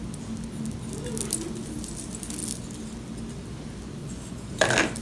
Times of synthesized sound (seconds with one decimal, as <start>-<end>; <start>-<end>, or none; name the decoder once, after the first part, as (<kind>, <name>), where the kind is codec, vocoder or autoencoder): 4.0-4.5 (vocoder, Vocos)